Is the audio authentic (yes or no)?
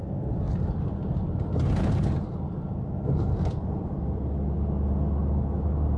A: yes